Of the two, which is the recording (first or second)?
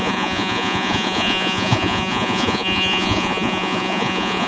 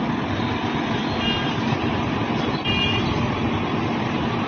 second